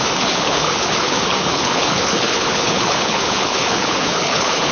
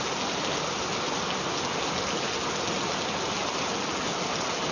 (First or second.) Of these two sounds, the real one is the second